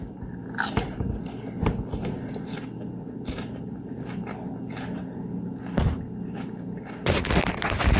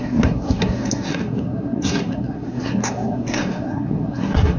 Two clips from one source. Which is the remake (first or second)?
second